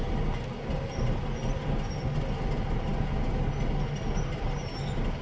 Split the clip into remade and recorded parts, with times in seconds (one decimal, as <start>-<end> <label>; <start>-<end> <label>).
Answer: 0.0-5.2 recorded